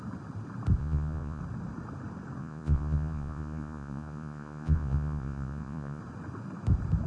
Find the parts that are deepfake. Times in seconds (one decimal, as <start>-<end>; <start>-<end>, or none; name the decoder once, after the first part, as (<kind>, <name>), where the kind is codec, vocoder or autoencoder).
0.8-1.4 (vocoder, Vocos); 2.4-6.0